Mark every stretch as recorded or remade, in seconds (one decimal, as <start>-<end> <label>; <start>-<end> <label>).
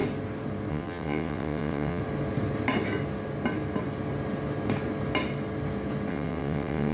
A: 0.0-0.7 recorded; 0.7-2.0 remade; 2.0-6.1 recorded; 6.1-6.9 remade